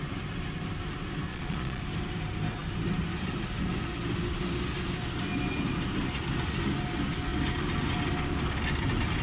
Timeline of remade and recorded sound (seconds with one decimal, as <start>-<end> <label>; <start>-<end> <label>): 0.0-1.3 recorded; 1.3-1.8 remade; 1.8-9.2 recorded